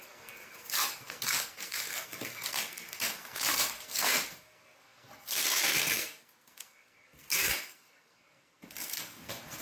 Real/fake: fake